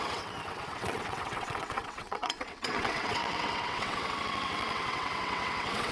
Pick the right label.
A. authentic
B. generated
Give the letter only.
B